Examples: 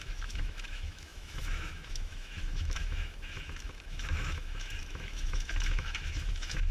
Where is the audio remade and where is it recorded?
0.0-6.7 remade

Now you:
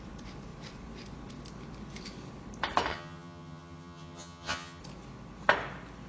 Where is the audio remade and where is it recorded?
0.0-2.9 recorded; 2.9-4.8 remade; 4.8-6.1 recorded

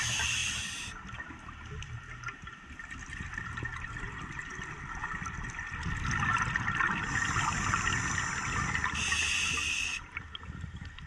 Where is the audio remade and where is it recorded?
0.0-11.1 recorded

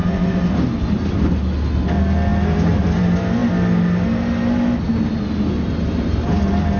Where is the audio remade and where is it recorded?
0.0-6.8 recorded

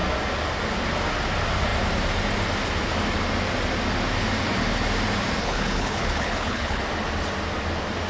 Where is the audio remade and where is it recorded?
0.0-5.4 recorded; 5.4-6.8 remade; 6.8-8.1 recorded

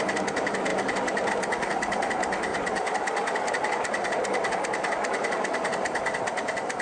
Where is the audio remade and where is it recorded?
0.0-2.5 recorded; 2.5-3.5 remade; 3.5-6.8 recorded